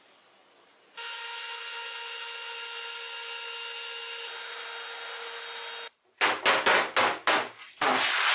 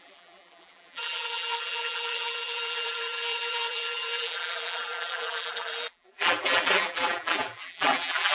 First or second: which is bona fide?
first